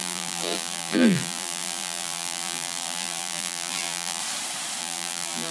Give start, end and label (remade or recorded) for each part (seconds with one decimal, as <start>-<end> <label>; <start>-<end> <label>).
0.0-4.2 remade; 4.2-4.8 recorded; 4.8-5.5 remade